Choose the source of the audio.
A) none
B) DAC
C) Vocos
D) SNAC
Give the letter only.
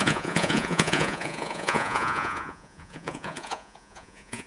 C